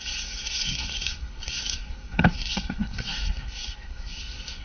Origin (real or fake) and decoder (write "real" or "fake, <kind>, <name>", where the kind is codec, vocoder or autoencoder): fake, codec, SNAC